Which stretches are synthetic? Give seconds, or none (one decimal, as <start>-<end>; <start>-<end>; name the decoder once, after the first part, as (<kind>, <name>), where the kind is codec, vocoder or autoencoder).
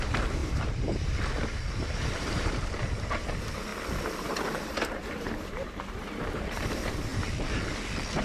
0.0-3.7 (vocoder, BigVGAN v2); 4.2-7.1